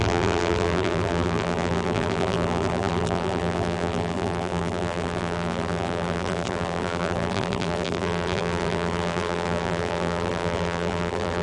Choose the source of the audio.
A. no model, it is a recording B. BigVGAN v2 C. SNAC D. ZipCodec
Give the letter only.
B